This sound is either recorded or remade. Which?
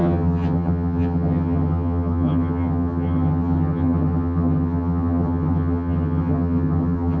remade